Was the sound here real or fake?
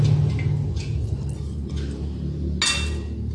real